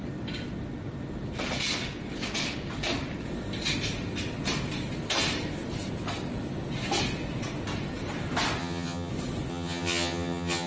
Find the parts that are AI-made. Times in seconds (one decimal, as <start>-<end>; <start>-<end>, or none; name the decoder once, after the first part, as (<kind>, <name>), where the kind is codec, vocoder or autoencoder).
8.6-9.1 (vocoder, HiFi-GAN); 9.5-10.7